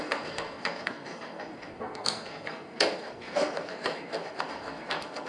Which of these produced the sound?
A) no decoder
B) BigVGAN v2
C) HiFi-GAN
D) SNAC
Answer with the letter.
D